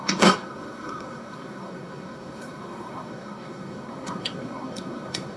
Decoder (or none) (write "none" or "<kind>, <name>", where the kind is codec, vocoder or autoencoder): codec, SNAC